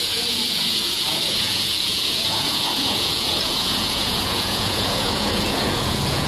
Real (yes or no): no